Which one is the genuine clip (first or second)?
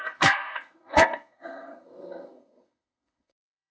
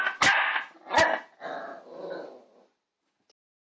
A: second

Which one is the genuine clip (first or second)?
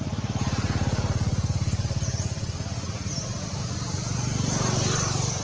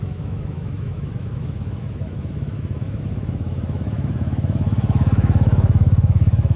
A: first